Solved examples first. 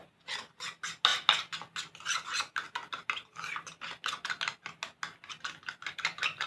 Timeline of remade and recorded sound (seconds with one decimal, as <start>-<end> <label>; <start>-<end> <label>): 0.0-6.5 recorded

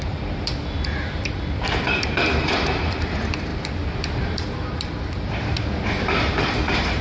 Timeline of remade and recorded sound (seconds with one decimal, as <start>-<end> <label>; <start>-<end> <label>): 0.0-7.0 remade

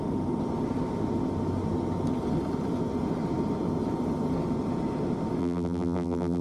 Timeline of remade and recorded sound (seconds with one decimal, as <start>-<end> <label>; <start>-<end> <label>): 0.0-5.4 recorded; 5.4-6.4 remade

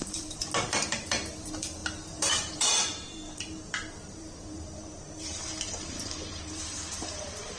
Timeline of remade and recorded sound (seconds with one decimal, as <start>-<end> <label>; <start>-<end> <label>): 0.0-7.6 remade

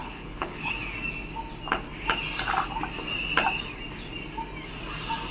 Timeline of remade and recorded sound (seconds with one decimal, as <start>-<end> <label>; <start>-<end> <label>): 0.0-0.7 remade; 0.7-5.3 recorded

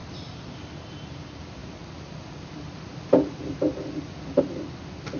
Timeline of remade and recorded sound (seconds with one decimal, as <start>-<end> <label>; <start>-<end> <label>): 0.0-5.2 recorded

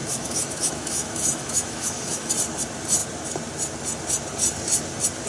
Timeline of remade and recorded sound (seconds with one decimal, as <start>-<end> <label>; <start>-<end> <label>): 0.0-2.3 remade; 2.3-5.3 recorded

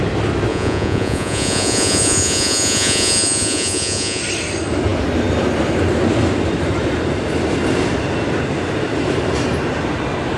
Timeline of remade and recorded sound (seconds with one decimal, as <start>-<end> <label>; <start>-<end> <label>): 0.0-0.5 recorded; 0.5-4.2 remade; 4.2-10.4 recorded